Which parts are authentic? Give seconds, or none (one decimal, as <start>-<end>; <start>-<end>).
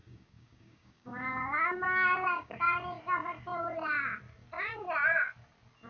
2.6-5.9